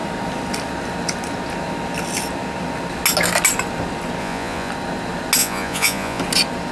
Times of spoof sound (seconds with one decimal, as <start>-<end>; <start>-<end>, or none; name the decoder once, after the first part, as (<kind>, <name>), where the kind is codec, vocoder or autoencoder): 4.2-4.7 (vocoder, Vocos); 5.4-6.2